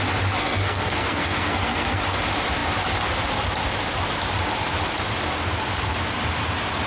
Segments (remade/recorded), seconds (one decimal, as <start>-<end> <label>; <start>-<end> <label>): 0.0-0.4 recorded; 0.4-2.0 remade; 2.0-6.9 recorded